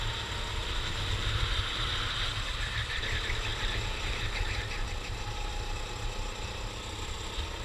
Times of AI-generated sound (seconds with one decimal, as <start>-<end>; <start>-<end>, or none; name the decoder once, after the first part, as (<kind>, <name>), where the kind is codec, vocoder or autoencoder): 0.6-1.5 (vocoder, BigVGAN v2)